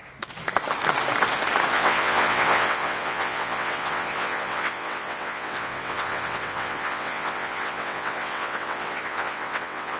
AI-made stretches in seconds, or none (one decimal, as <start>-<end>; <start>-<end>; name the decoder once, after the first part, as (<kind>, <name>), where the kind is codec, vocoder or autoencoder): 1.7-10.0 (vocoder, WaveNeXt)